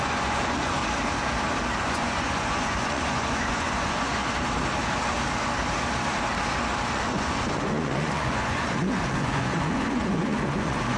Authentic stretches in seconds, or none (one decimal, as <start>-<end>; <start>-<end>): 0.8-1.8; 4.2-6.9